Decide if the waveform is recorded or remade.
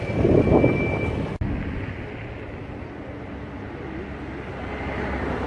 recorded